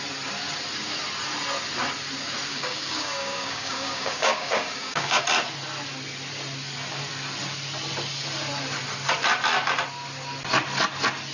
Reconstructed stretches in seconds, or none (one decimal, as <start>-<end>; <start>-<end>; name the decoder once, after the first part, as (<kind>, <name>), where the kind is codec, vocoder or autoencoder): 2.5-5.2 (codec, DAC)